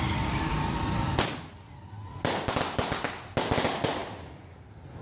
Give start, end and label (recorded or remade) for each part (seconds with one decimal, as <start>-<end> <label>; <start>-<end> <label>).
0.0-5.0 recorded